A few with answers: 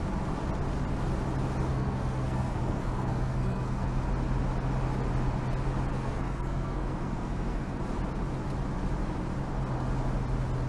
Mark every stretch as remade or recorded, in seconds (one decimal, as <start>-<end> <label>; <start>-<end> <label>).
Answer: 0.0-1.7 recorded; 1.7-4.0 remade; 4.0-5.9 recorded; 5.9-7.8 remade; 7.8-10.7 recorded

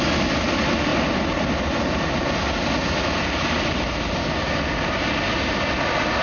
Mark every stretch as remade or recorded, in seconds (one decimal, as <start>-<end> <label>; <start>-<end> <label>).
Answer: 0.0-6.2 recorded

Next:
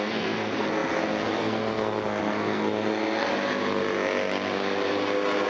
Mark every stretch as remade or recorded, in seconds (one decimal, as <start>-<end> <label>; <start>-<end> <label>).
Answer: 0.0-3.3 remade; 3.3-5.5 recorded

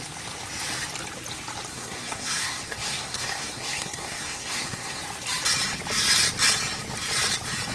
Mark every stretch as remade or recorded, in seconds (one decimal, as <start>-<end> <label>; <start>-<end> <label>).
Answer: 0.0-1.7 recorded; 1.7-5.0 remade; 5.0-7.7 recorded

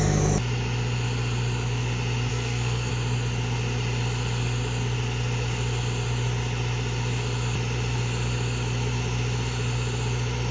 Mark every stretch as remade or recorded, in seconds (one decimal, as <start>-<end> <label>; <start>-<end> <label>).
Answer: 0.0-2.3 recorded; 2.3-2.9 remade; 2.9-10.5 recorded

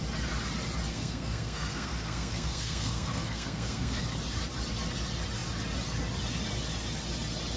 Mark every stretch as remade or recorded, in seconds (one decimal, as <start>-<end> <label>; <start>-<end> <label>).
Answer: 0.0-0.9 recorded; 0.9-4.0 remade; 4.0-7.6 recorded